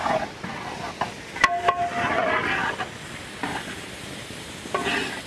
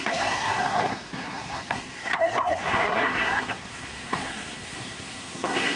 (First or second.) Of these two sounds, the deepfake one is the second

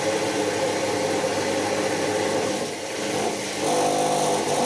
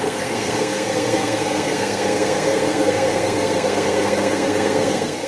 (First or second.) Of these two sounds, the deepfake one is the second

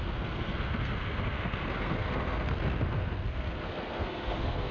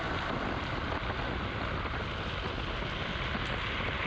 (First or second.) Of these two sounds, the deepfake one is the first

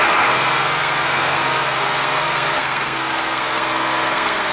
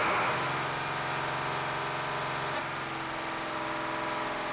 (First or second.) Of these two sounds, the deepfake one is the first